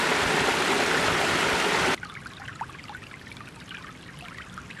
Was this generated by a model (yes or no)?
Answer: no